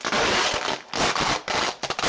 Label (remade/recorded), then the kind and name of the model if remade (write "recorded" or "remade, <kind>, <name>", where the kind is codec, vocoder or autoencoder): recorded